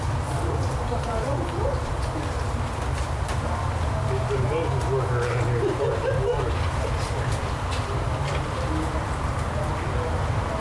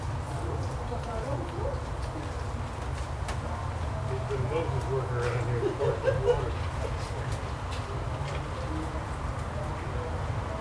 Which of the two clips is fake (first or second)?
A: first